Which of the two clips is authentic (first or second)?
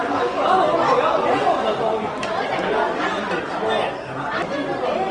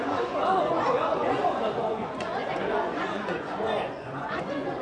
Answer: first